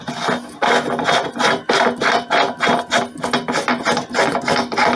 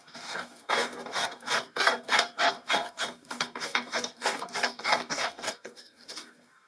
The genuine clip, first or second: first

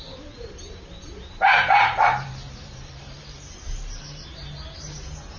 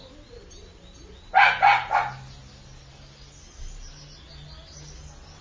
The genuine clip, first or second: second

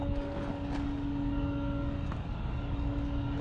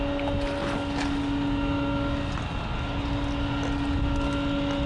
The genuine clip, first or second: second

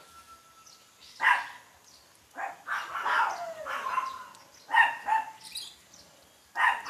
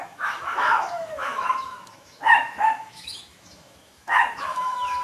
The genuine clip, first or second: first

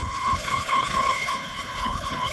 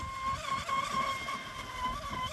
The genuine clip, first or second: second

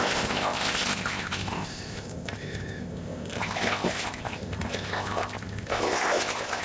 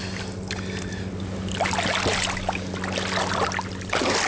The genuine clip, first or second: second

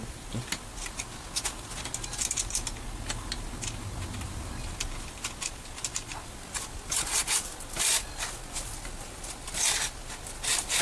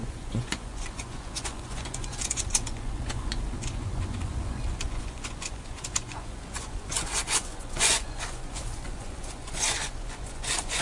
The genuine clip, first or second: first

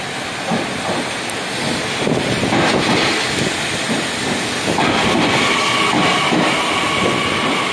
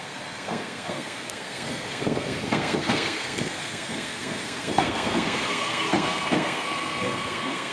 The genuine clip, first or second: first